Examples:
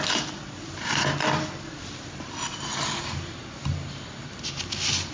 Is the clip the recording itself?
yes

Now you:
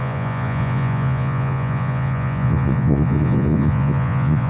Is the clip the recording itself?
no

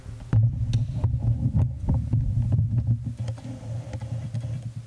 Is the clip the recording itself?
yes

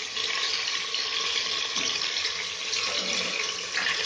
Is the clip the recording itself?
yes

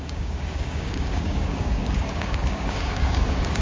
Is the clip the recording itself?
no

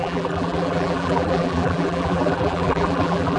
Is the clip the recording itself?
no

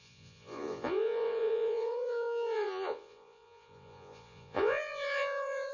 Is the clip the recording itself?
no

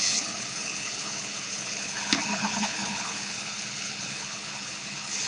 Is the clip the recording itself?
no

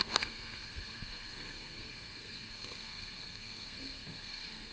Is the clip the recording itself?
no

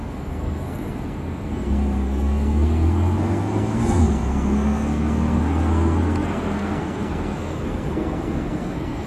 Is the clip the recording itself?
no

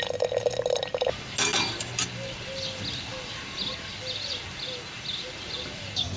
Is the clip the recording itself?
yes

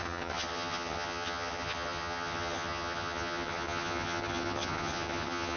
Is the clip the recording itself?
no